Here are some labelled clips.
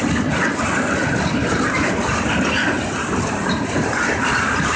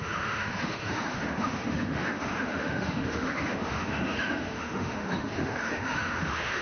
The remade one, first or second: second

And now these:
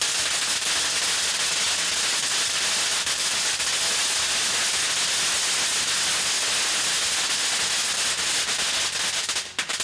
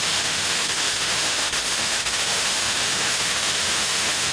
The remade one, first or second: second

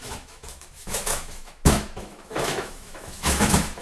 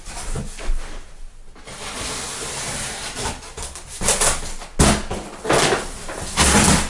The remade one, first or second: first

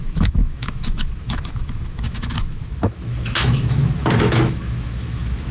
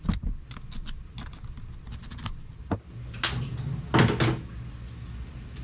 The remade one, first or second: first